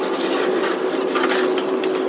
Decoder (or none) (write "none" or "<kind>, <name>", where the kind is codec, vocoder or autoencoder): none